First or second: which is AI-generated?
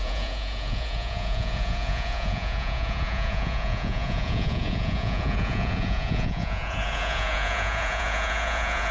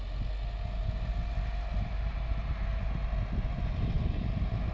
first